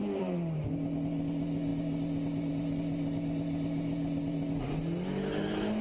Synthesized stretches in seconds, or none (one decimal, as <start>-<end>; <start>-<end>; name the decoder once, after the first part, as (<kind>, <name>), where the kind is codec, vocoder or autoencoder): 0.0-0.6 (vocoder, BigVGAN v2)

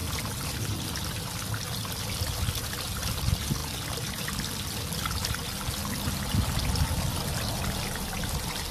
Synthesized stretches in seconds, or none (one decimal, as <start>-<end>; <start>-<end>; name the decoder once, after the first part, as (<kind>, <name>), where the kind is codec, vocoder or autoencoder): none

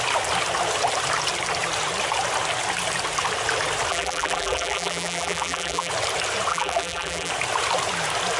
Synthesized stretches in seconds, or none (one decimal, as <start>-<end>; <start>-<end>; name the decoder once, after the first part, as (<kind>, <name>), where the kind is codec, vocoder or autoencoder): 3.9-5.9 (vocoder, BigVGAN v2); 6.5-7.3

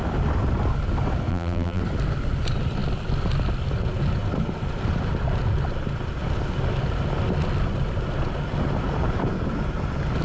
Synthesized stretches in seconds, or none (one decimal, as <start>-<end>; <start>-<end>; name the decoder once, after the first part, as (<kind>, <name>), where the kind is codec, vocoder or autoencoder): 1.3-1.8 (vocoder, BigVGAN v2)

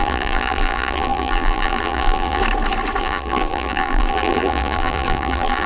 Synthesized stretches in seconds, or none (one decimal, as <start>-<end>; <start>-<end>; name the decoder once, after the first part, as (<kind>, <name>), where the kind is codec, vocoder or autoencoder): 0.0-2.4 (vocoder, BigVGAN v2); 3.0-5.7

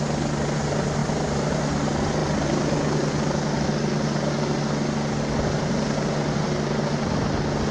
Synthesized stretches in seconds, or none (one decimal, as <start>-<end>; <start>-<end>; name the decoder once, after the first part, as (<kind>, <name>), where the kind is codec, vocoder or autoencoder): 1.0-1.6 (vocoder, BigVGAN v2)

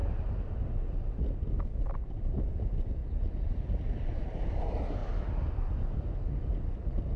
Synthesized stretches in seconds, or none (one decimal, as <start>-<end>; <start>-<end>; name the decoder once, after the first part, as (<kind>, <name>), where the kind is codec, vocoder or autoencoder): 0.0-0.6 (vocoder, BigVGAN v2); 3.0-4.6

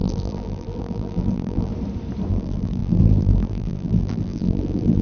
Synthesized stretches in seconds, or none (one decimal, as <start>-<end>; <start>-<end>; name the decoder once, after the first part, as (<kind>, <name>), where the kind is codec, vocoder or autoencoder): 0.0-1.7 (vocoder, BigVGAN v2); 2.3-5.0